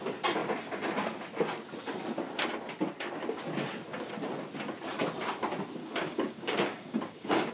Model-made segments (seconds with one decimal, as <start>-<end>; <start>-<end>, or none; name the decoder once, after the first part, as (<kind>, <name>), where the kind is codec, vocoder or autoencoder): 5.8-7.5 (codec, DAC)